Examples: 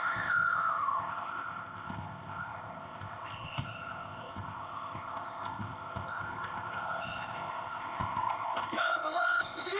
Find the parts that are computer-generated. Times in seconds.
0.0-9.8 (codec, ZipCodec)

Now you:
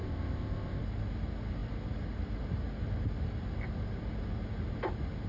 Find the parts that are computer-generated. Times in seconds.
0.0-0.8 (codec, ZipCodec)

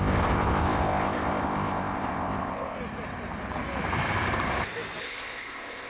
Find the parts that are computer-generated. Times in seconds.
0.0-2.8 (codec, ZipCodec); 5.0-5.9

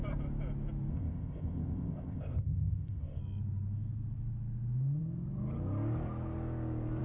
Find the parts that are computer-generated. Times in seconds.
0.9-3.2 (codec, ZipCodec)

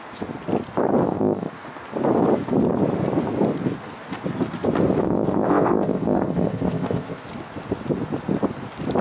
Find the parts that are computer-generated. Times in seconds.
1.0-1.5 (codec, ZipCodec); 5.0-7.3

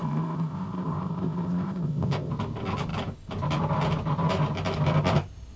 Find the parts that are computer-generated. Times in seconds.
0.0-2.3 (codec, ZipCodec)

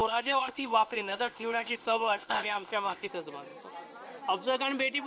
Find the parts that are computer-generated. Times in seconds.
0.0-3.1 (codec, ZipCodec)